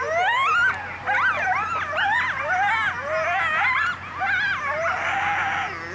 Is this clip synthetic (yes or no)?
no